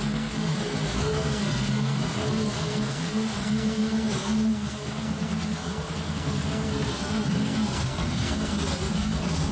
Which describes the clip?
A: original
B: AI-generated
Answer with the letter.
B